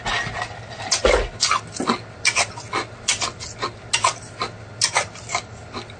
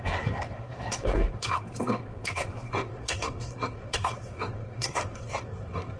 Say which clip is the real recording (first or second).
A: first